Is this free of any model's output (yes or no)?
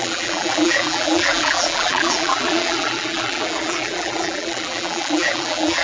no